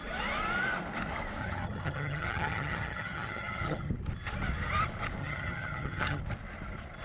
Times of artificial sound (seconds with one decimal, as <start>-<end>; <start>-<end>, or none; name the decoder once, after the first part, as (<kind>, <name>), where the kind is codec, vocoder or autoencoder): 1.4-3.9 (vocoder, HiFi-GAN); 5.2-6.2